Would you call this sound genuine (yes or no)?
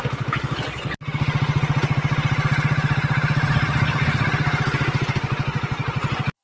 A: yes